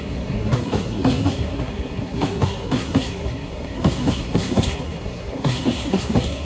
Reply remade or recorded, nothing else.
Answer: remade